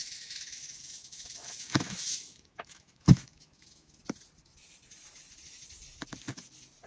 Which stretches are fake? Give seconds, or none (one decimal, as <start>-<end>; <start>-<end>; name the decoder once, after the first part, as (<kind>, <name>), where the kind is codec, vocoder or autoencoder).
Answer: 0.0-4.0 (autoencoder, DAC-VAE)